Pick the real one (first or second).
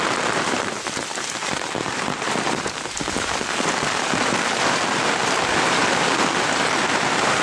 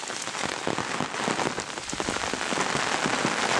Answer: second